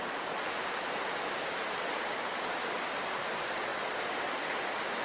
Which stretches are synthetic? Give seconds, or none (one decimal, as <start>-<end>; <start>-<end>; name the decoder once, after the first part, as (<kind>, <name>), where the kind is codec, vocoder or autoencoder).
none